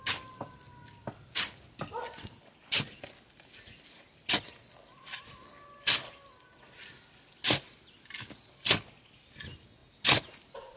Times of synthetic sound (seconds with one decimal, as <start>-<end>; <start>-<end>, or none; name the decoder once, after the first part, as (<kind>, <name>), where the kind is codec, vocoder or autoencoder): none